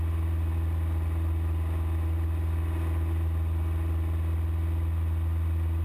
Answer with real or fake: real